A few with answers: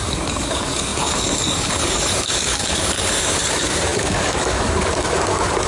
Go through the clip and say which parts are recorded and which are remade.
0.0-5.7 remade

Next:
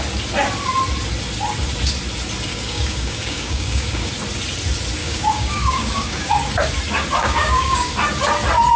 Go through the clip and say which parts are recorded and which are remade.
0.0-2.5 recorded; 2.5-4.1 remade; 4.1-5.0 recorded; 5.0-6.3 remade; 6.3-7.2 recorded; 7.2-7.9 remade; 7.9-8.8 recorded